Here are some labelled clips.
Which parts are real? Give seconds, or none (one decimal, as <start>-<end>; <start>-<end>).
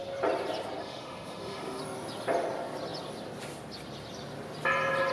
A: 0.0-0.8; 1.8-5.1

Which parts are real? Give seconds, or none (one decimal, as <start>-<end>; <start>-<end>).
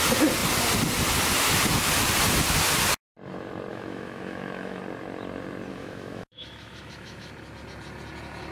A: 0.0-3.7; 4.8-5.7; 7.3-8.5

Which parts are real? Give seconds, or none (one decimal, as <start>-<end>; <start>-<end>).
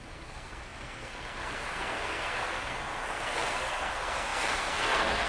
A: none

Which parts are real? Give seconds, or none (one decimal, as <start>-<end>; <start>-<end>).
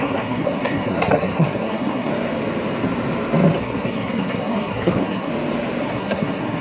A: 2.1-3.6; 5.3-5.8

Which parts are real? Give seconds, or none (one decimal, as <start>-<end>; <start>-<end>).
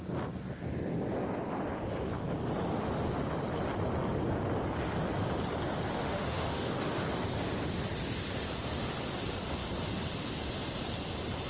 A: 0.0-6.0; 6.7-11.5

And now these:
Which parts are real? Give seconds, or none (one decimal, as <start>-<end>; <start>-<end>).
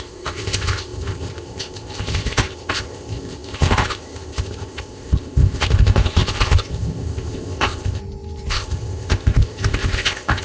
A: 8.0-8.5